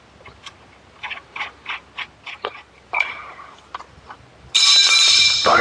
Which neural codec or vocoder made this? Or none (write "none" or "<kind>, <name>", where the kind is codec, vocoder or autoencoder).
none